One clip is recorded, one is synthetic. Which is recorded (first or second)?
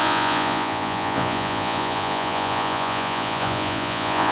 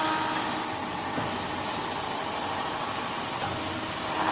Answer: second